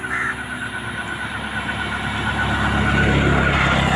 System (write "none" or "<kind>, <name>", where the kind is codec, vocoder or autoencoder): none